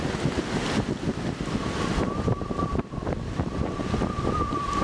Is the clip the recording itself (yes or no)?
yes